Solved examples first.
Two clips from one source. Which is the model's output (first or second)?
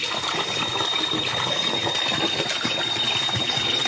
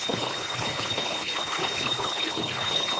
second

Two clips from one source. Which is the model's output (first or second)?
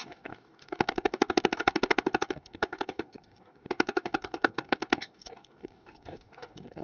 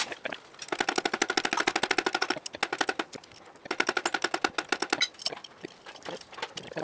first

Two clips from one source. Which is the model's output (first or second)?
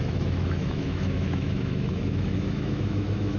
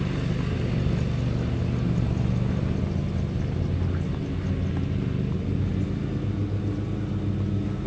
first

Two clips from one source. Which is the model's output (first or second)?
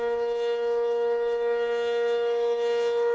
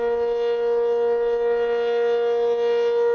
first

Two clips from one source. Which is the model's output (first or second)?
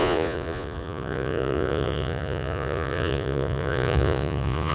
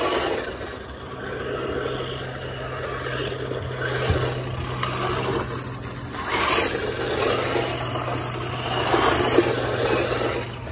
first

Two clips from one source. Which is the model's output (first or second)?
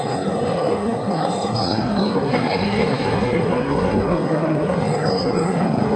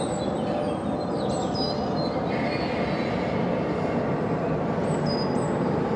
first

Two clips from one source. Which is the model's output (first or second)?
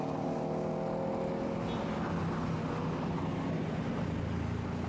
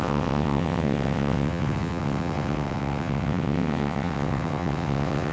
second